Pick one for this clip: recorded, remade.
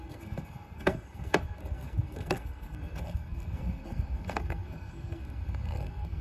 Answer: remade